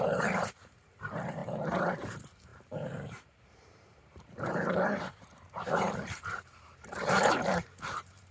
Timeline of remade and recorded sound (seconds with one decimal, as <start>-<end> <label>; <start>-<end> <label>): 0.0-1.4 remade; 1.4-2.1 recorded; 2.1-8.3 remade